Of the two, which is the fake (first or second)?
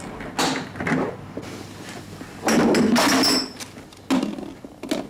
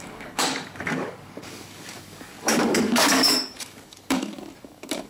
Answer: second